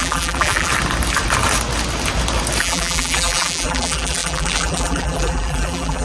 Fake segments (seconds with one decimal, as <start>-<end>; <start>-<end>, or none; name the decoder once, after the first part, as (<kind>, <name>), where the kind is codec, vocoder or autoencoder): 0.0-0.7 (vocoder, BigVGAN v2); 2.6-6.0